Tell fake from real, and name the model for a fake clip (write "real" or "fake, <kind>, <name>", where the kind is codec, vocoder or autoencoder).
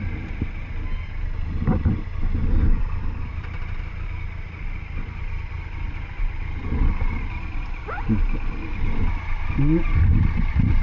real